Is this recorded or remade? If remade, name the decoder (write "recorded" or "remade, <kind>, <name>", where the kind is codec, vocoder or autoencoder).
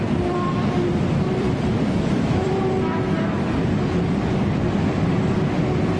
remade, vocoder, BigVGAN v2